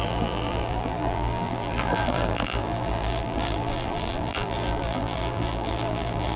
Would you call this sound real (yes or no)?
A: no